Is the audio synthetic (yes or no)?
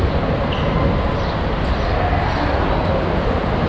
no